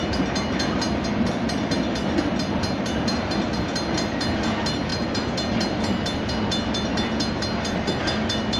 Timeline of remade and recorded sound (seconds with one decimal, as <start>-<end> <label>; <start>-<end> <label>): 0.0-8.6 recorded